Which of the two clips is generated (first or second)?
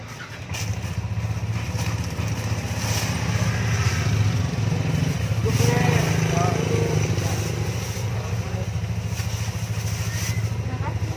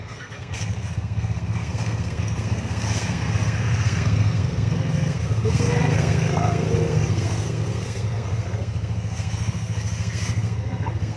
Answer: second